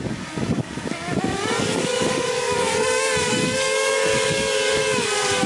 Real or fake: fake